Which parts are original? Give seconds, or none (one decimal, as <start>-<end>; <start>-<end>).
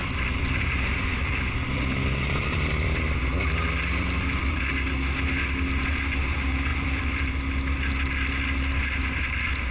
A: 4.6-6.7; 7.3-9.7